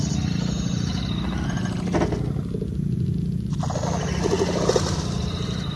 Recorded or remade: recorded